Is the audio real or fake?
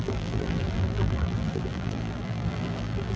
fake